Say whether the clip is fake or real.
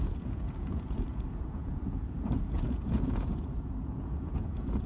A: fake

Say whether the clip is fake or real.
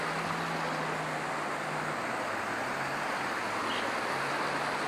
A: real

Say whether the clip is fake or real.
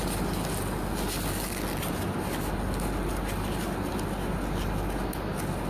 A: real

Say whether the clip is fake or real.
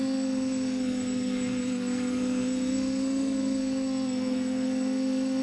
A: fake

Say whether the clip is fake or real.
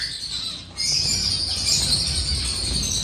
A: real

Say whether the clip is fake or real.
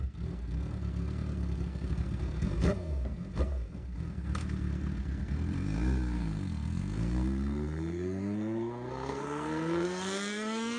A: fake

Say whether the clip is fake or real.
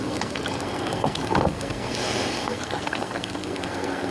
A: fake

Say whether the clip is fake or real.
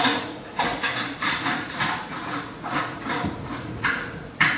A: fake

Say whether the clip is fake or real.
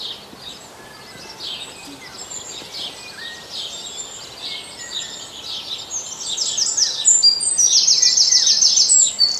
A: real